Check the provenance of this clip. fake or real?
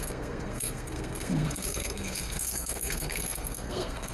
fake